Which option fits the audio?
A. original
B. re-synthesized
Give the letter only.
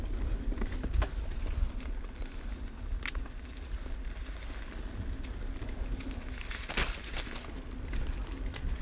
A